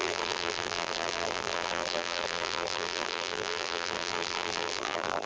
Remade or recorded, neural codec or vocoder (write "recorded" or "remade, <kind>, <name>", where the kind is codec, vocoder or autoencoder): remade, vocoder, BigVGAN v2